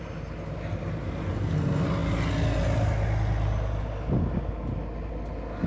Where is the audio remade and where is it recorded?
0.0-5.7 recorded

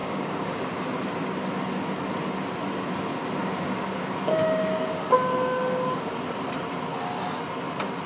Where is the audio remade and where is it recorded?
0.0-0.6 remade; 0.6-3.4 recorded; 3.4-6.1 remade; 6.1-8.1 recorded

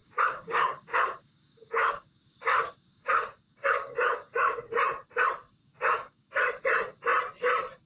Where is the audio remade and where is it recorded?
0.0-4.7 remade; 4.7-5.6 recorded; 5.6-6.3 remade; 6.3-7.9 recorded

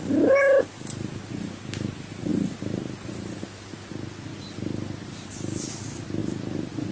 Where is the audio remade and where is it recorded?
0.0-6.9 recorded

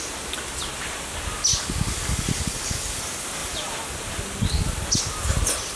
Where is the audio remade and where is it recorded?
0.0-1.5 recorded; 1.5-3.0 remade; 3.0-5.8 recorded

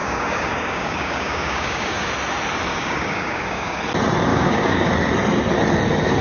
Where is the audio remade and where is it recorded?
0.0-2.1 remade; 2.1-2.7 recorded; 2.7-3.8 remade; 3.8-4.3 recorded; 4.3-4.9 remade; 4.9-6.2 recorded